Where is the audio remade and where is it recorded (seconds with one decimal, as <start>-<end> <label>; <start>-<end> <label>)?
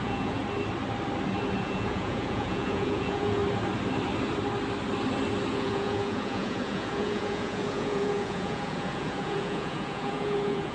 0.0-0.4 remade; 0.4-1.6 recorded; 1.6-3.4 remade; 3.4-5.5 recorded; 5.5-10.7 remade